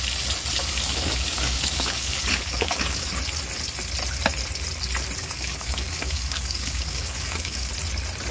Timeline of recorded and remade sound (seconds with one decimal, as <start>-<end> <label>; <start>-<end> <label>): 0.0-0.6 recorded; 0.6-3.1 remade; 3.1-5.2 recorded; 5.2-7.7 remade; 7.7-8.3 recorded